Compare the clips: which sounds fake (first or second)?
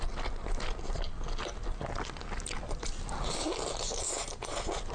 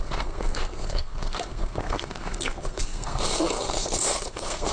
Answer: second